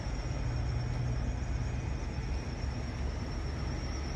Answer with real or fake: real